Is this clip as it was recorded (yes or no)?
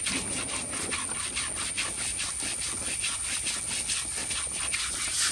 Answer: yes